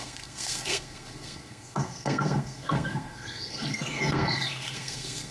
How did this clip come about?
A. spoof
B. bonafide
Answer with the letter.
A